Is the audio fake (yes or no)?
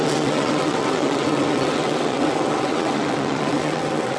yes